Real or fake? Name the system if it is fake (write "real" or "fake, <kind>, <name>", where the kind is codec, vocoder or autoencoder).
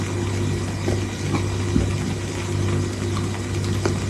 real